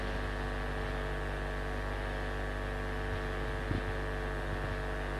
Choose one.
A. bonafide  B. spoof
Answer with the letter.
A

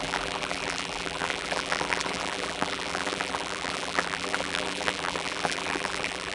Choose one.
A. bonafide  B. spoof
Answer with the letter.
B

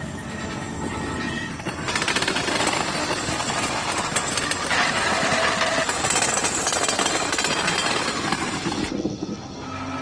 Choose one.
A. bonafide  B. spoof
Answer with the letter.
A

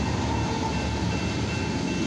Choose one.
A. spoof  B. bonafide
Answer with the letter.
B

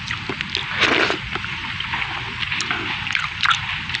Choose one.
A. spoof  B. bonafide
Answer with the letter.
B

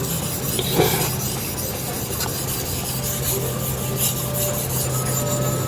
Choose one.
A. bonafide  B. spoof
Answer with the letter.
A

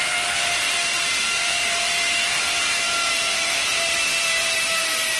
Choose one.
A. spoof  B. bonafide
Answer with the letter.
A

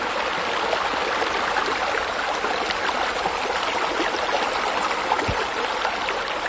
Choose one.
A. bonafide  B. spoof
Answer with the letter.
A